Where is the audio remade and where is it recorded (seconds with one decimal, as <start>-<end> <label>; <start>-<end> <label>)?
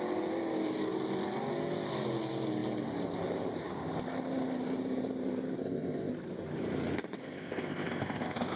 0.0-5.6 recorded; 5.6-6.1 remade; 6.1-7.2 recorded; 7.2-8.6 remade